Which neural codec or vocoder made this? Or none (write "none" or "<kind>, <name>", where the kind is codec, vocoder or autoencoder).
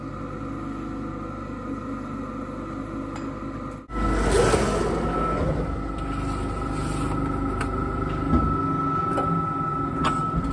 none